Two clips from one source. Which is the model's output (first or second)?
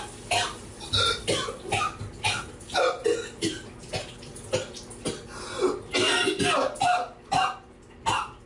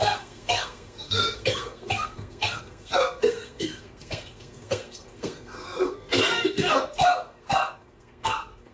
second